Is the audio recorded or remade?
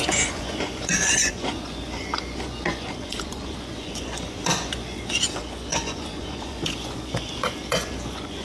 remade